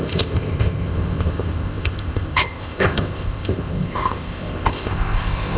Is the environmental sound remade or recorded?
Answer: remade